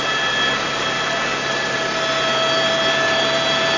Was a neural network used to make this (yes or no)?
no